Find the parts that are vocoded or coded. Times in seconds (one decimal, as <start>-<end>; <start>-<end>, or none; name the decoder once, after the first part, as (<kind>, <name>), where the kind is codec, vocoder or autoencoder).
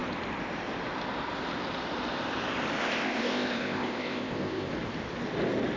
2.8-4.7 (codec, ZipCodec)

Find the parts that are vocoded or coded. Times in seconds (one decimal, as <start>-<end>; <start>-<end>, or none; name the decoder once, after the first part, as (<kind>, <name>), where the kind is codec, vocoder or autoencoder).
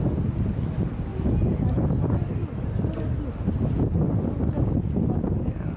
none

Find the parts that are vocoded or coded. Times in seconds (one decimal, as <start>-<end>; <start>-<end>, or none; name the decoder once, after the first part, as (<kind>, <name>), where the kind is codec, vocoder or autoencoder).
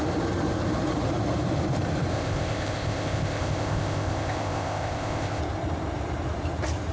2.1-5.4 (codec, ZipCodec)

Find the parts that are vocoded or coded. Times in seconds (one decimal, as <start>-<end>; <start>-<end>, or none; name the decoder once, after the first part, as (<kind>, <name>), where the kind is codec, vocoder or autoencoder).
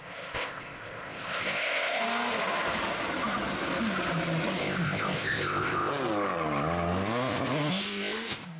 0.0-2.0 (codec, ZipCodec); 4.6-5.9; 7.7-8.6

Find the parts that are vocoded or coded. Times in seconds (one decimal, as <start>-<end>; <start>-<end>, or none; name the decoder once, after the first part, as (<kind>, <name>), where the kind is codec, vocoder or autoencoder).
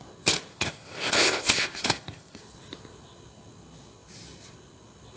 0.5-2.4 (codec, ZipCodec)